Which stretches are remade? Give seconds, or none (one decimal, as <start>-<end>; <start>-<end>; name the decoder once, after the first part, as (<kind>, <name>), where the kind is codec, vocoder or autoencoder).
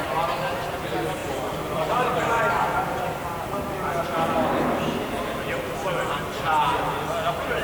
1.2-4.5 (vocoder, BigVGAN v2)